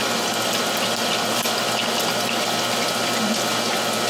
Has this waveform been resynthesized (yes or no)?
no